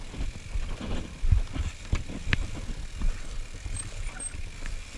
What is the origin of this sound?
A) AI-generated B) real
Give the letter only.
A